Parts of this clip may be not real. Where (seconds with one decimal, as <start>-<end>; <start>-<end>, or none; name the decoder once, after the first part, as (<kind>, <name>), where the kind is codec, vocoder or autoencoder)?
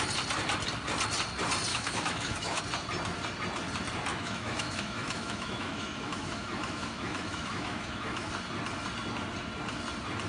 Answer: 1.7-2.6 (autoencoder, DAC-VAE); 4.1-8.3